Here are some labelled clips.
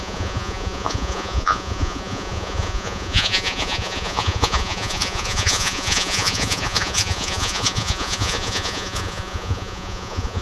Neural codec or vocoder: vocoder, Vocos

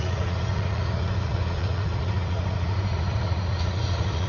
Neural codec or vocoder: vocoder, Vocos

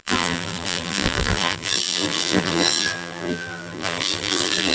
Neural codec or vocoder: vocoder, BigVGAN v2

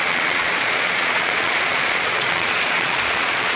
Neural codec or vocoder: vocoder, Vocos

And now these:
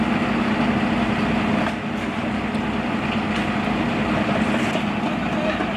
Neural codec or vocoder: none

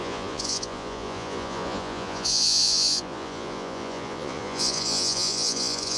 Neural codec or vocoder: vocoder, Vocos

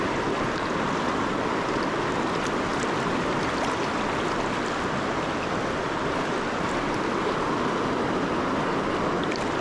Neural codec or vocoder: none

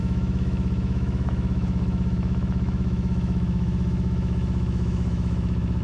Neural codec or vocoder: autoencoder, DAC-VAE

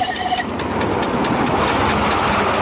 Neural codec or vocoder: none